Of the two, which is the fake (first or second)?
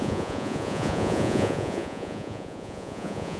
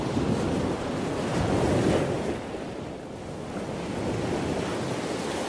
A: first